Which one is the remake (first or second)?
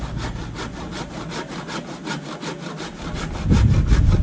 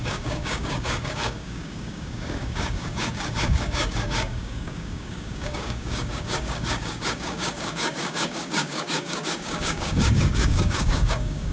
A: second